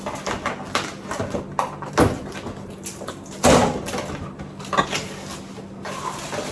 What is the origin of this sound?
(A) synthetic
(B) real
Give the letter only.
B